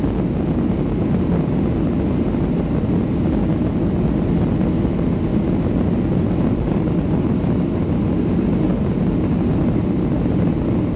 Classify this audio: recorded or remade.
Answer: recorded